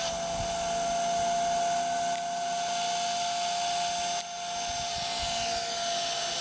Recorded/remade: recorded